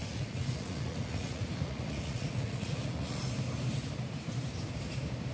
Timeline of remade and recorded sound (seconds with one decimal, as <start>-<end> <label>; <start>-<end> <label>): 0.0-3.2 remade; 3.2-5.3 recorded